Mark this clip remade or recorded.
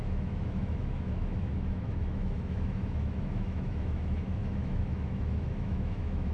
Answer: remade